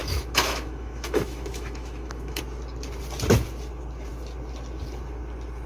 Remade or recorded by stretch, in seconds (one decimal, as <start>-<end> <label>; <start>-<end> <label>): 0.0-2.4 remade; 2.4-5.7 recorded